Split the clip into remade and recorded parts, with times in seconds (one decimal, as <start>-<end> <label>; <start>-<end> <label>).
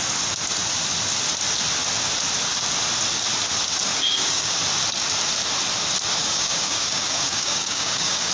0.0-3.9 recorded; 3.9-4.5 remade; 4.5-6.2 recorded; 6.2-8.3 remade